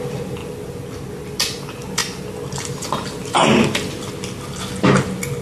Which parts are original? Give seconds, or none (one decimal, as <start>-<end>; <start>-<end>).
0.0-5.4